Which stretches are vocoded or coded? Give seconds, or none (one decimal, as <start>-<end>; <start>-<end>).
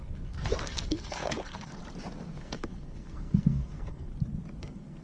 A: 0.0-1.8; 2.4-4.1; 4.6-5.0